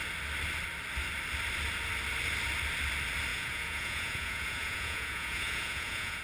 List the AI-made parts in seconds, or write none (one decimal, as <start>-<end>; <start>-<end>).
3.3-6.2